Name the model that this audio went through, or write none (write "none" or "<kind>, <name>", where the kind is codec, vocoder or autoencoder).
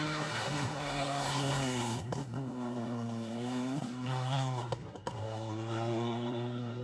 codec, SNAC